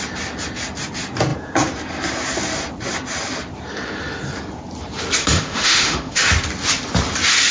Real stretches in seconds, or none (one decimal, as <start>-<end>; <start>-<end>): 0.0-5.2; 6.2-7.5